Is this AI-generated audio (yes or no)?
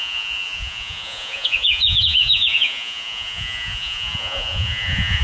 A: yes